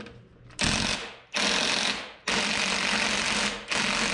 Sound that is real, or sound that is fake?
real